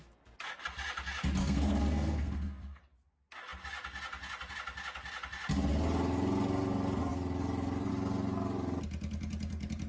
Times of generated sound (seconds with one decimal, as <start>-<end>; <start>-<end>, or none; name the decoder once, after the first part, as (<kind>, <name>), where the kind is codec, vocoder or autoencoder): 1.4-2.8 (codec, SNAC)